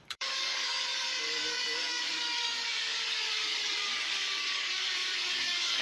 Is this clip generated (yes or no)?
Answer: yes